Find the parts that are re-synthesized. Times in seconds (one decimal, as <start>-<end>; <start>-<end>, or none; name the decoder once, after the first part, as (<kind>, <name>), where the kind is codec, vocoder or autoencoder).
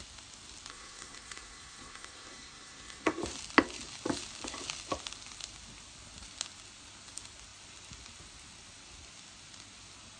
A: 0.7-3.2 (codec, SNAC)